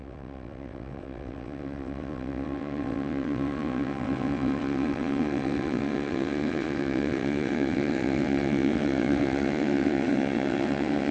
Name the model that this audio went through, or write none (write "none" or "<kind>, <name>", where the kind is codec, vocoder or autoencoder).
vocoder, WaveNeXt